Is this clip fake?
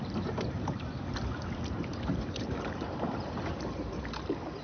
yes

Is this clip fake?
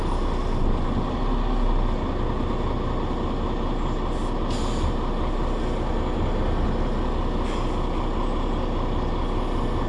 no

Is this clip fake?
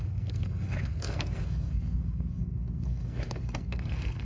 yes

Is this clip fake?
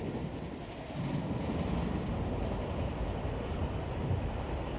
no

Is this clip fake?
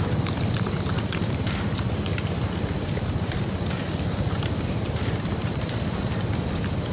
yes